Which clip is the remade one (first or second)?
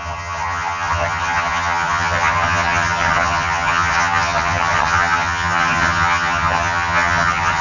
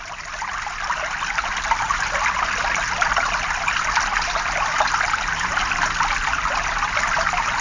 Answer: first